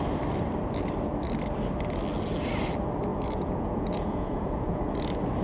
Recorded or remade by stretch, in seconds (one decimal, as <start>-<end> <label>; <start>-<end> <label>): 0.0-3.1 recorded; 3.1-4.8 remade; 4.8-5.4 recorded